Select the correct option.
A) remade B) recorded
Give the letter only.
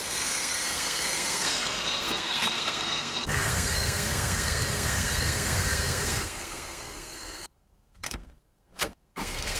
A